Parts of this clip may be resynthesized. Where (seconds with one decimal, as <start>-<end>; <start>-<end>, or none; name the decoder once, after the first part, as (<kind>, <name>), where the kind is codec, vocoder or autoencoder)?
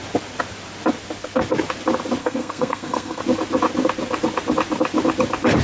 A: 2.2-3.2 (codec, SNAC)